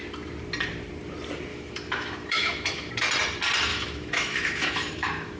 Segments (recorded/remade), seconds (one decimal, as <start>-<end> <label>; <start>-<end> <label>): 0.0-1.5 recorded; 1.5-2.9 remade; 2.9-3.7 recorded; 3.7-5.4 remade